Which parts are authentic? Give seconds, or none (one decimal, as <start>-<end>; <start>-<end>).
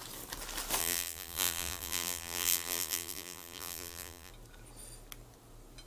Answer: 0.0-0.8; 4.3-5.9